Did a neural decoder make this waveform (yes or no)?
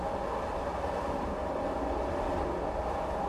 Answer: no